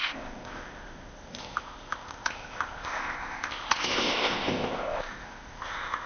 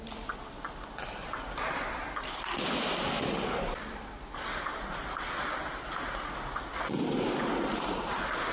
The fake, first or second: first